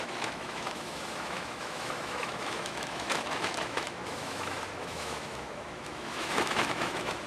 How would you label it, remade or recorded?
remade